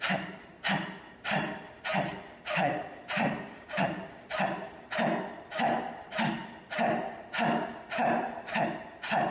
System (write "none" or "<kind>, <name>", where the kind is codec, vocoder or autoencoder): none